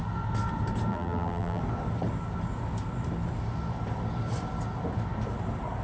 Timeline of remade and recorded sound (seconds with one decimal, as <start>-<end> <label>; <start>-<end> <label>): 0.0-0.9 recorded; 0.9-1.6 remade; 1.6-5.8 recorded